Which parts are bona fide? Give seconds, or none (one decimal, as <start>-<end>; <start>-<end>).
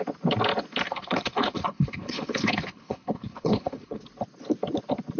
0.0-0.9; 4.0-5.2